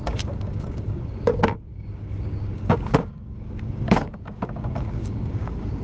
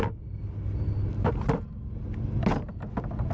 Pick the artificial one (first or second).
first